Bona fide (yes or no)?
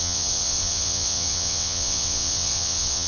no